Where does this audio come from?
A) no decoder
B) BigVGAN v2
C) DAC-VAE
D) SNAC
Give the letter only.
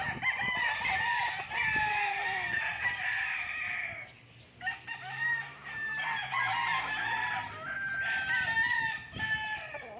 A